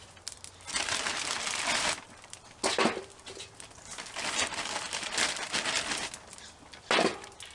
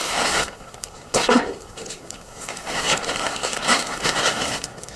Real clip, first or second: first